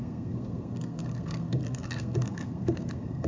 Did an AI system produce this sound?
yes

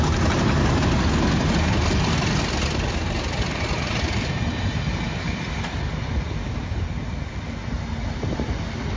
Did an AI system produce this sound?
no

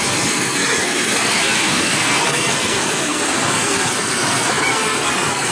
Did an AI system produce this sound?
yes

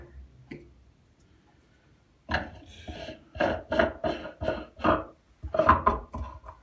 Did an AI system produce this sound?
no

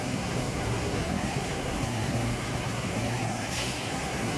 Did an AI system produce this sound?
yes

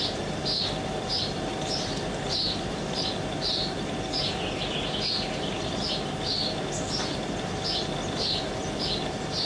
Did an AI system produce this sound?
no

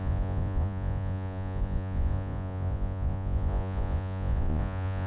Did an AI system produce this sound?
yes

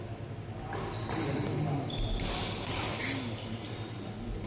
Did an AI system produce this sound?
no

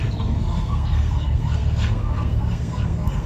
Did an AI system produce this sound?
yes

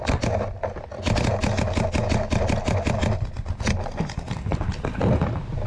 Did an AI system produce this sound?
no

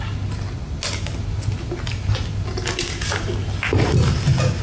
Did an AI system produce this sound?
no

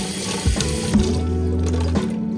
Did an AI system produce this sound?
no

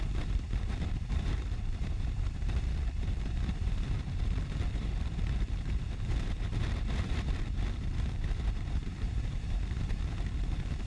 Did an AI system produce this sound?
yes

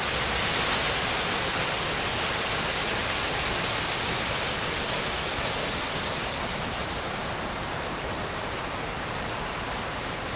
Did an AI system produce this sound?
no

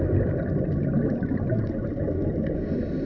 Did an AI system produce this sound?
no